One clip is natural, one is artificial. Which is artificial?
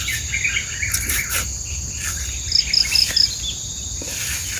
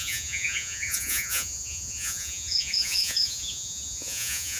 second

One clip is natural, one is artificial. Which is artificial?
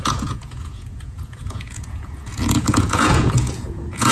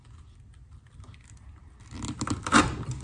first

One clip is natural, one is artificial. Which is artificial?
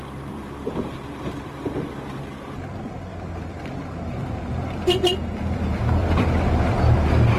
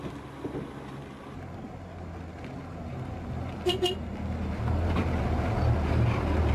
first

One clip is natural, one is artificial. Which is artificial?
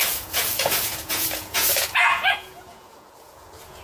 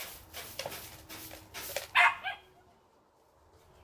first